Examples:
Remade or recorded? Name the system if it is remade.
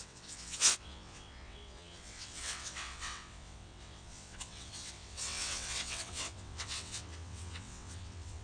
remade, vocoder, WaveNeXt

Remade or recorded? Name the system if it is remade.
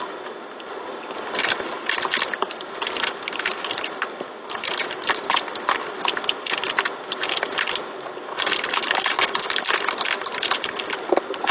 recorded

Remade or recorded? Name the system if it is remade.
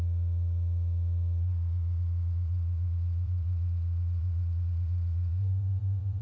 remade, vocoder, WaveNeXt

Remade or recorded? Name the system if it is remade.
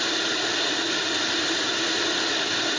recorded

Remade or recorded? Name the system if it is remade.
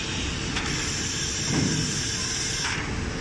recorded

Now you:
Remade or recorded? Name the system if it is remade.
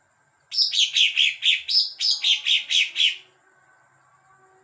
recorded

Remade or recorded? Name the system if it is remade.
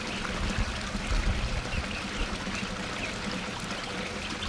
recorded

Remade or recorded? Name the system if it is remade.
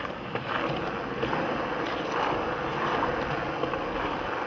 recorded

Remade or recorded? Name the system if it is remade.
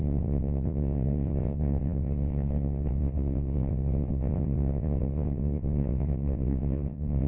remade, vocoder, WaveNeXt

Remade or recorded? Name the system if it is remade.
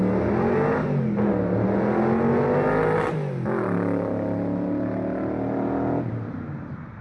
recorded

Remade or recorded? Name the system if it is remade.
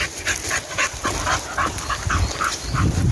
recorded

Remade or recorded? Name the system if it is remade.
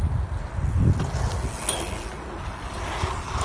recorded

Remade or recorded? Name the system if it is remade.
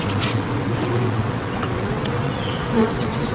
remade, vocoder, WaveNeXt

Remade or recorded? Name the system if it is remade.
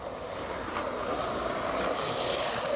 recorded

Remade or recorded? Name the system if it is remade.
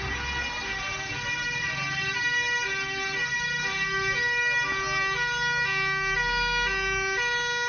recorded